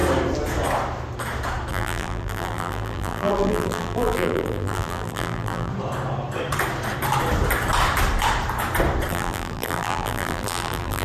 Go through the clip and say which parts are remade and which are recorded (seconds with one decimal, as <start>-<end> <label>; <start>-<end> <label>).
0.0-1.7 recorded; 1.7-5.7 remade; 5.7-9.1 recorded; 9.1-11.0 remade